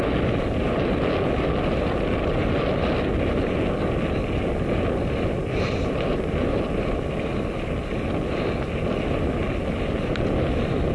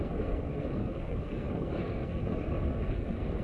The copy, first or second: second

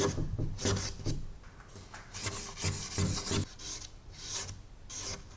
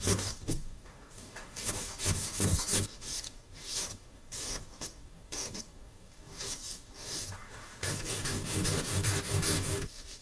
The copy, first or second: second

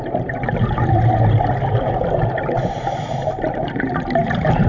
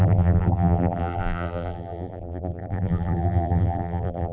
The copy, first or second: second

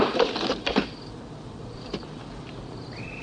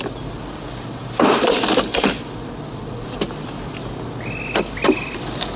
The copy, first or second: first